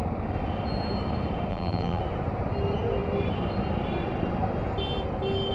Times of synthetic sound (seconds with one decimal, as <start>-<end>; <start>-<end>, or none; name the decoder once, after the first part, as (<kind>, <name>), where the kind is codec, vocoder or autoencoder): 1.5-2.0 (vocoder, BigVGAN v2)